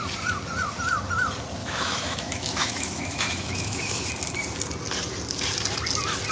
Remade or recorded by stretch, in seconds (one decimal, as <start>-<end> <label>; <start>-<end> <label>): 0.0-1.6 recorded; 1.6-4.1 remade; 4.1-6.3 recorded